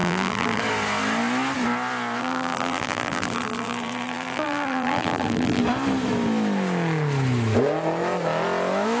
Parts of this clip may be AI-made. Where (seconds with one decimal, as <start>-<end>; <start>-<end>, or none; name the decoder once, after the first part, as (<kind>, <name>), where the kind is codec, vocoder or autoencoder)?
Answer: 0.0-0.6 (vocoder, BigVGAN v2); 2.2-5.6